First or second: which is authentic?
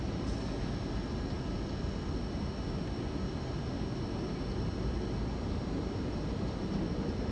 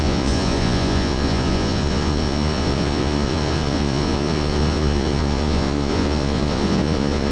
first